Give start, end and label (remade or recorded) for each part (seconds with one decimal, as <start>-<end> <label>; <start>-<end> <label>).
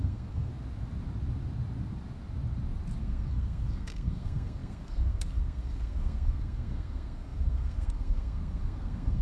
0.0-0.5 remade; 0.5-3.0 recorded; 3.0-9.2 remade